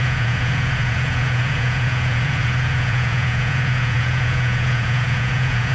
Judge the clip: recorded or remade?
remade